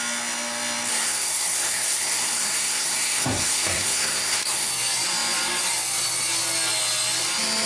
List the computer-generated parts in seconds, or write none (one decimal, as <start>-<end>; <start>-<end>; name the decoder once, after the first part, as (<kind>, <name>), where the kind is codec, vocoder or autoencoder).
0.9-4.7 (codec, SNAC)